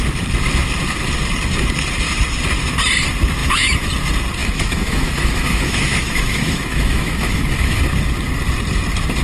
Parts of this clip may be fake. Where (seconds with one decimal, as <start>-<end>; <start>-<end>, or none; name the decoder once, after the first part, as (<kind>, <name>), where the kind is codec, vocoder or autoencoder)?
3.4-3.9 (autoencoder, DAC-VAE); 4.4-7.8